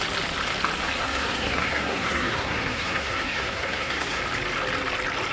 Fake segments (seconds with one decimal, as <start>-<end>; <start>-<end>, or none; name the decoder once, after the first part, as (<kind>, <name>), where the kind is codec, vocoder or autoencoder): 1.0-4.2 (codec, SNAC)